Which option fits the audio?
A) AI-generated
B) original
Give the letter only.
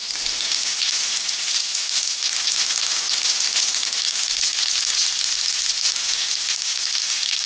B